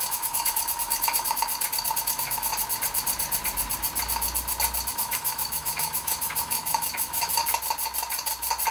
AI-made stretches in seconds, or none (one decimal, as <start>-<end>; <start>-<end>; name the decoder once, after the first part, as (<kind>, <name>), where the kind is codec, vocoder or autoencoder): 0.0-1.5 (autoencoder, DAC-VAE); 2.0-2.5; 4.9-7.4